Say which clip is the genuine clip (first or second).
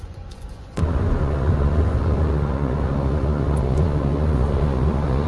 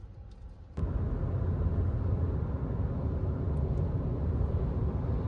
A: second